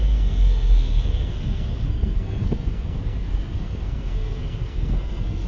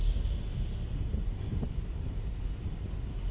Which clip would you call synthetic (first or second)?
first